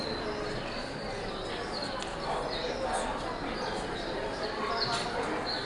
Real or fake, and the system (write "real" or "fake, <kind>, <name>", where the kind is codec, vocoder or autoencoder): real